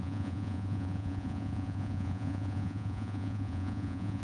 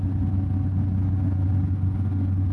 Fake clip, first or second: first